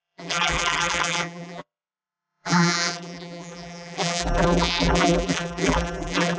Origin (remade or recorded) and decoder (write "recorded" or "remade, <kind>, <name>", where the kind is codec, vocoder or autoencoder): remade, vocoder, BigVGAN v2